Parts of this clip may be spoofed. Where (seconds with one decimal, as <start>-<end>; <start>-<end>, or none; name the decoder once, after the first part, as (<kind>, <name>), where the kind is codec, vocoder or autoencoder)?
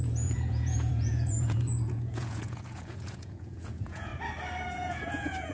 0.0-4.1 (vocoder, Vocos); 4.7-5.5